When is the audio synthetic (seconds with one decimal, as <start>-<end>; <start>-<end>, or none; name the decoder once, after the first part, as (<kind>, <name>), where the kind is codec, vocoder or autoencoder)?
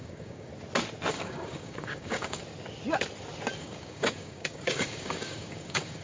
0.0-0.5 (codec, DAC); 1.1-2.4; 3.6-6.0